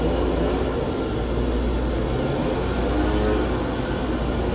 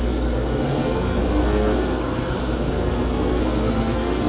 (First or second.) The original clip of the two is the first